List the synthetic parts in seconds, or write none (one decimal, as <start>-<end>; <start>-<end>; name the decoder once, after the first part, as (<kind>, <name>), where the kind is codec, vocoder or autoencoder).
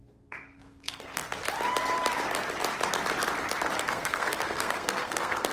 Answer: 0.0-1.2 (codec, SNAC); 3.9-5.5